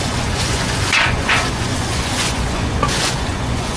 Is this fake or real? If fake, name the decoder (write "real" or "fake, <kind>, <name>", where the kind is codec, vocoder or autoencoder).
fake, vocoder, Vocos